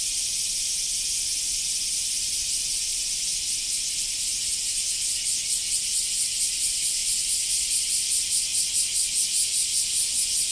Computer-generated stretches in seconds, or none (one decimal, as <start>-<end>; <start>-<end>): 7.0-7.8